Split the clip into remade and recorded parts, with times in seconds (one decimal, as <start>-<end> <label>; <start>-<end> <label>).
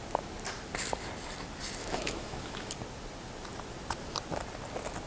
0.0-1.8 recorded; 1.8-2.7 remade; 2.7-5.1 recorded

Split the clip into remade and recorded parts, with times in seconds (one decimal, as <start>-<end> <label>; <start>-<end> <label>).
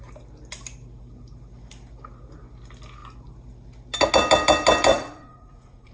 0.0-4.9 recorded; 4.9-5.9 remade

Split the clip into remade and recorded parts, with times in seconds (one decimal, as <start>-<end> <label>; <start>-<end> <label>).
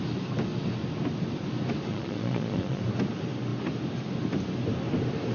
0.0-1.9 recorded; 1.9-2.8 remade; 2.8-5.3 recorded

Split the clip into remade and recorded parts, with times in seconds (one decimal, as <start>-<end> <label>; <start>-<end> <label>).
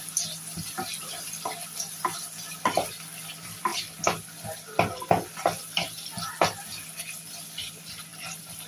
0.0-8.1 recorded; 8.1-8.7 remade